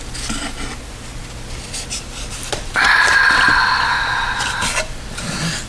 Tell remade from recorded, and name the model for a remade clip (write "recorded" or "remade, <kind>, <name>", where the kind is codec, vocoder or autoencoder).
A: recorded